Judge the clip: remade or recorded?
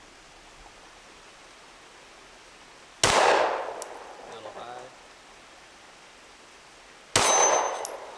recorded